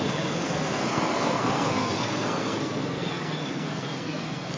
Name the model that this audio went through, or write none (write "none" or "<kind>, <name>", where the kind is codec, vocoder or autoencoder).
codec, SNAC